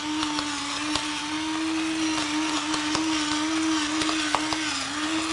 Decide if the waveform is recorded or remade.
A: recorded